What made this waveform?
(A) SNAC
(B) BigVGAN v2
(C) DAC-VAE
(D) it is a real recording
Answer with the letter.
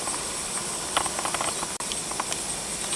D